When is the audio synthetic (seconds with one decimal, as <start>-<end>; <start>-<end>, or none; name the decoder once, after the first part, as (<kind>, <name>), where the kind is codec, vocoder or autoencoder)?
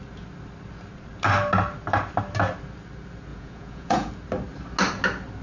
3.3-4.1 (vocoder, Vocos)